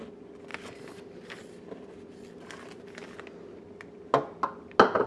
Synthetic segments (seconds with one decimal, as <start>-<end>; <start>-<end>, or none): none